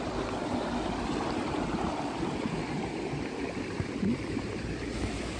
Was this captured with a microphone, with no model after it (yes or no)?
yes